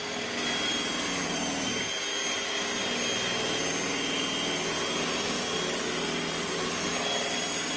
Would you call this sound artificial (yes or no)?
no